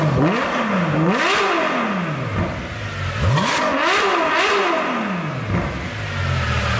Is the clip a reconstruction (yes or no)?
no